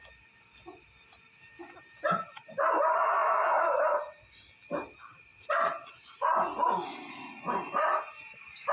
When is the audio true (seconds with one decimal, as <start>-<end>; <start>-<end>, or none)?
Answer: 0.0-8.7